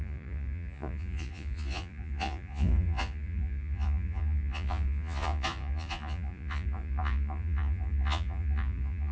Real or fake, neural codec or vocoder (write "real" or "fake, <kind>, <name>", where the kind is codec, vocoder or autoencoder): fake, vocoder, Vocos